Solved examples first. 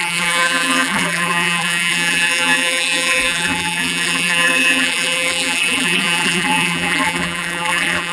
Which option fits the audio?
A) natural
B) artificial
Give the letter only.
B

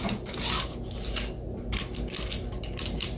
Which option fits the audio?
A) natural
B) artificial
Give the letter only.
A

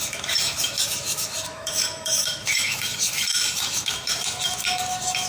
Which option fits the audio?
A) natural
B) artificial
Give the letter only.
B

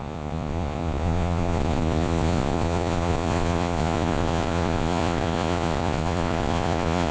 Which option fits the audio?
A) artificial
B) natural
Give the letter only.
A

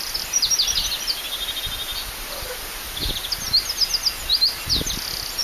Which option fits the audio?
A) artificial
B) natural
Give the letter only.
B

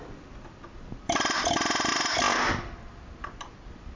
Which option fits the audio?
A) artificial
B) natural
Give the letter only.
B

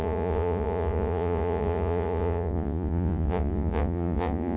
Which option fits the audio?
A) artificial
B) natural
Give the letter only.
A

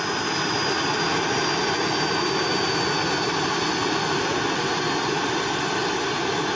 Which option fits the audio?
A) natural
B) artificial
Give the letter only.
A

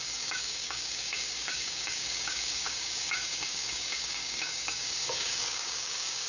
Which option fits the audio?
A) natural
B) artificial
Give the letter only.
B